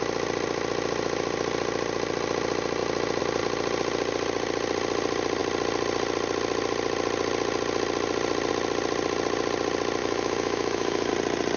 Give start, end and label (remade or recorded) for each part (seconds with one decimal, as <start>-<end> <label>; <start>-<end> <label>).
0.0-10.0 recorded; 10.0-11.1 remade; 11.1-11.6 recorded